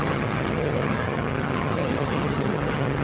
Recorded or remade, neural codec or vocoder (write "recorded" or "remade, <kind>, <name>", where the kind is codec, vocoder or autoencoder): remade, vocoder, HiFi-GAN